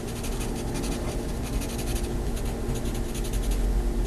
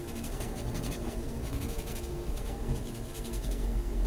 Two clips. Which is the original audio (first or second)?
first